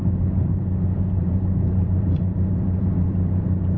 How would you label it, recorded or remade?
remade